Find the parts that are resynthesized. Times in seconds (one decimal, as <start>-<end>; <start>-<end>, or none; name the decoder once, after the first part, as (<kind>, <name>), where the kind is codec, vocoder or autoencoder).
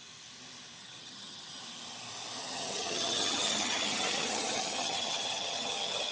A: 0.8-1.6 (vocoder, HiFi-GAN); 2.4-6.1